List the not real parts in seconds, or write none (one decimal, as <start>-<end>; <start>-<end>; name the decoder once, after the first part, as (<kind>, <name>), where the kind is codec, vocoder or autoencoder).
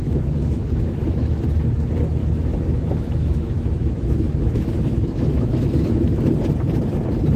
0.0-1.4 (autoencoder, DAC-VAE); 2.2-6.2